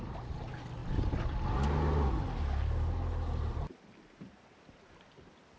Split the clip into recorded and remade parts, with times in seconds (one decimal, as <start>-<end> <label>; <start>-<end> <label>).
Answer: 0.0-5.6 recorded